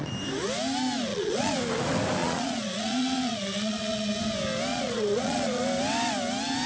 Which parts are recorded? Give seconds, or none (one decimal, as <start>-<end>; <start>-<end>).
0.0-1.1; 1.6-2.2; 4.1-4.7; 5.6-6.7